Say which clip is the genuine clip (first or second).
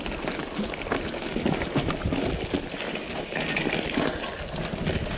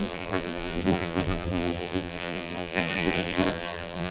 first